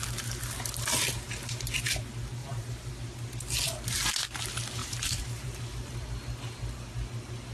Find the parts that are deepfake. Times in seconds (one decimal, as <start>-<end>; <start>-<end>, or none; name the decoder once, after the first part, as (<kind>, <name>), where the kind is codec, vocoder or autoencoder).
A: 2.4-2.9 (vocoder, BigVGAN v2); 4.8-5.6

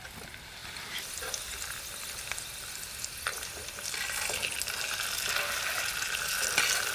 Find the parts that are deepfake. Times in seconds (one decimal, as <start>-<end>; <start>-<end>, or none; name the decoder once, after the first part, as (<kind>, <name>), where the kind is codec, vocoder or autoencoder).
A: none

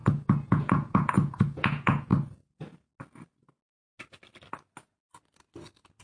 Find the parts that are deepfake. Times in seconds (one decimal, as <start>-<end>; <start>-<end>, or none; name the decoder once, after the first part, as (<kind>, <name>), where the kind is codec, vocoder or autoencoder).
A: 0.0-2.1 (vocoder, Vocos)